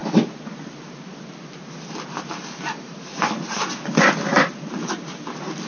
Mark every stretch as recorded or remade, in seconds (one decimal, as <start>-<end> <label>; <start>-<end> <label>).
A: 0.0-5.7 recorded